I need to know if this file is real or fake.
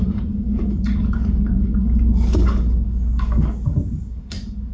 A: fake